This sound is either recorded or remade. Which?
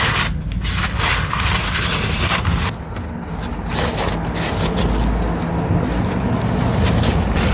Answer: recorded